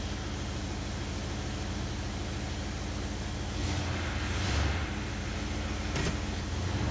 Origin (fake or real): real